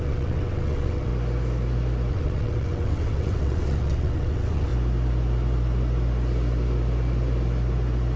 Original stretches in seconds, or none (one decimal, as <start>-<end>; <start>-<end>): 1.1-2.1; 4.7-8.2